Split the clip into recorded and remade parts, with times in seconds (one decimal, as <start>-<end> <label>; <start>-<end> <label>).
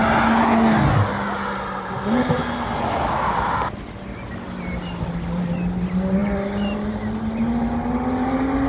0.0-8.7 recorded